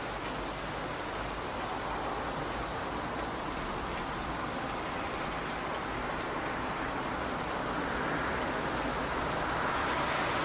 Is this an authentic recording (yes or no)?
yes